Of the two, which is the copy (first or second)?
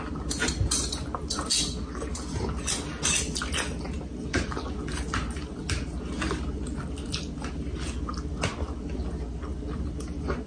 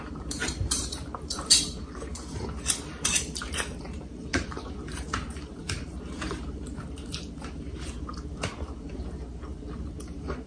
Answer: second